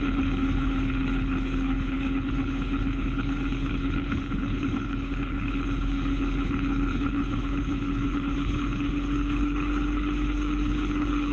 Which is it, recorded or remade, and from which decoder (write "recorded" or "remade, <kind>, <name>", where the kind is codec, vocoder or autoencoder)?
remade, codec, HILCodec